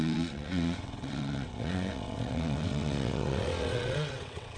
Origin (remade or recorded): remade